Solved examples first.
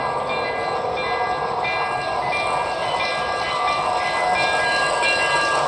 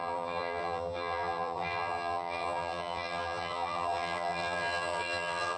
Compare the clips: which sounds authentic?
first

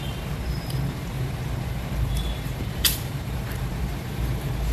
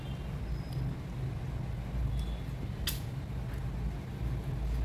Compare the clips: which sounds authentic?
second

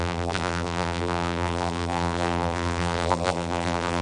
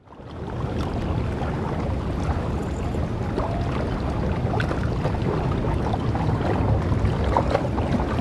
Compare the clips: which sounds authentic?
second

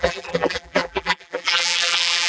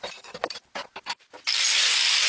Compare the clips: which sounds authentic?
second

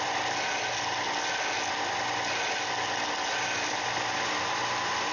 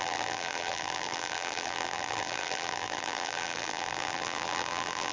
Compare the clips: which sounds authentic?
first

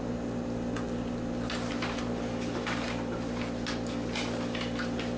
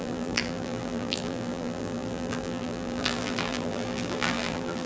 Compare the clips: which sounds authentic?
first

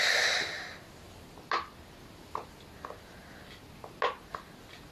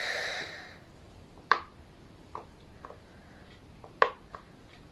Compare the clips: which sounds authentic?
first